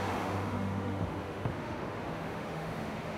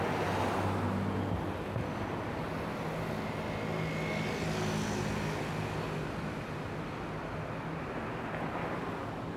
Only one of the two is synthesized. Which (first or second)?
first